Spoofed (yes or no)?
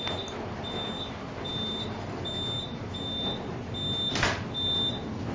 no